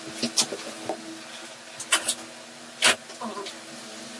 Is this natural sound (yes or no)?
yes